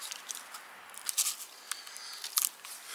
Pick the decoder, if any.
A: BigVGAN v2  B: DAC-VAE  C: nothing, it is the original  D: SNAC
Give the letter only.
C